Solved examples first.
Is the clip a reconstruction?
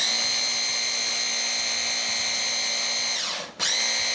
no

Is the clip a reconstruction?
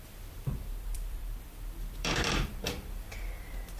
yes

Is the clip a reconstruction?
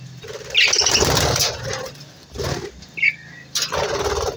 no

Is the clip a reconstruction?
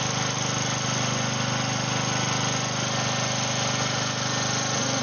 no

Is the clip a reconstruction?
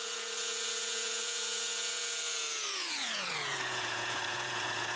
yes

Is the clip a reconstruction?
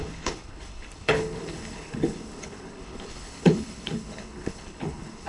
yes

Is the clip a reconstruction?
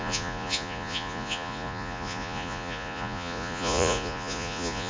yes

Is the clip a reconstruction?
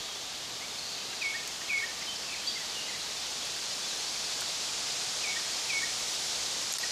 no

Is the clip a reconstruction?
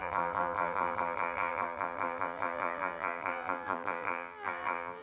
yes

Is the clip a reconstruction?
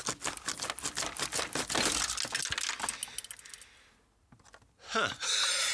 no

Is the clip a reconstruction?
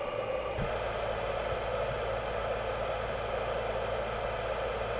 no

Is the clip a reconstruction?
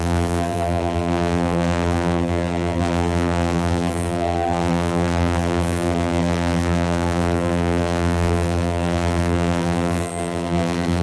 yes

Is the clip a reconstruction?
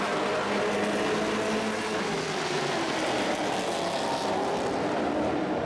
no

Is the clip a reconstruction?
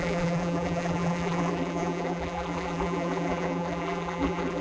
yes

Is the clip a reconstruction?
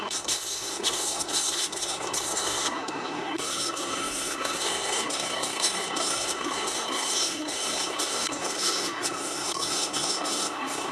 yes